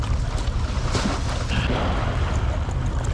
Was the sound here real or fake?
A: real